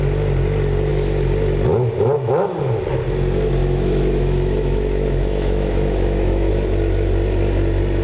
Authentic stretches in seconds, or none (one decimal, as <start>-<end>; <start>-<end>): 0.0-3.6; 6.5-8.0